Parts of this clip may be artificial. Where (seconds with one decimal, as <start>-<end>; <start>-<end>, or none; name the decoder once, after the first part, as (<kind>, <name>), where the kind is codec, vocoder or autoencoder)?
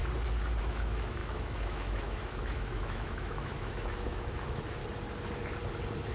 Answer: 0.6-4.8 (autoencoder, DAC-VAE)